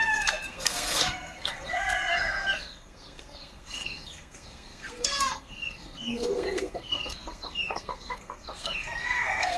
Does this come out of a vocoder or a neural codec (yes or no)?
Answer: yes